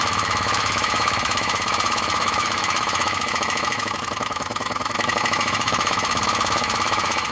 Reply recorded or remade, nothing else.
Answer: remade